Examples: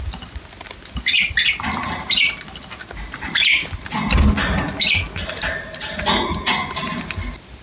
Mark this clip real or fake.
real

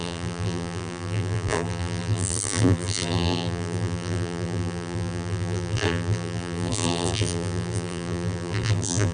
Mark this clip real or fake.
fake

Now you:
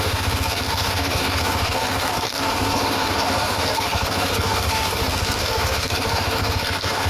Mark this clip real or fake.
fake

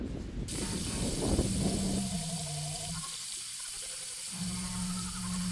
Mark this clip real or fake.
real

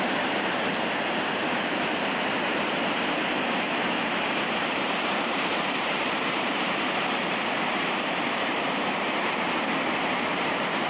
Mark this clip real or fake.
fake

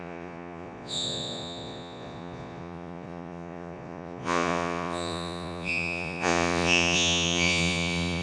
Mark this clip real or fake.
fake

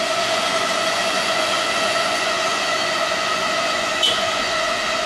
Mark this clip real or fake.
fake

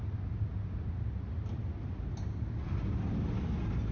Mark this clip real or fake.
real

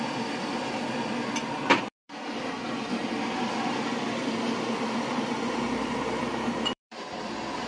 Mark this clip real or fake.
fake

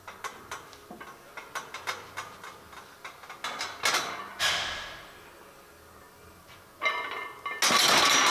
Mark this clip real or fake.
real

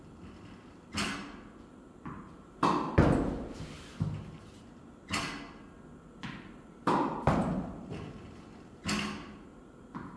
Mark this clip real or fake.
real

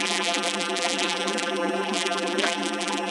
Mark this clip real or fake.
fake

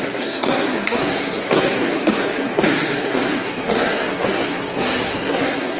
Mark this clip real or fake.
fake